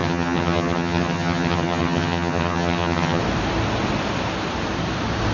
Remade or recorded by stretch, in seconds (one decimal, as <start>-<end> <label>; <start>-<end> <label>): 0.0-3.2 remade; 3.2-5.3 recorded